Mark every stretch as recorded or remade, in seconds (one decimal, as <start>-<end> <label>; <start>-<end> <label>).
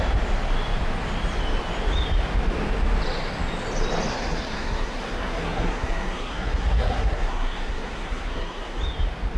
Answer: 0.0-4.1 recorded; 4.1-8.8 remade; 8.8-9.4 recorded